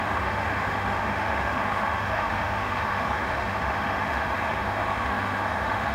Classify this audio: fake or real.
fake